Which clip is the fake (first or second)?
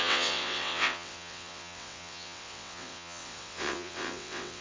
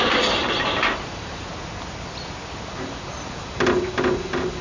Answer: first